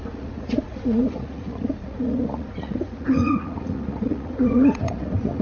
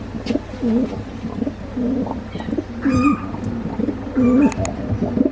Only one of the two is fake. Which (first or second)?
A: first